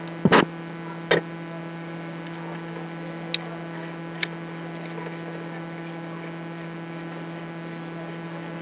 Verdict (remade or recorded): recorded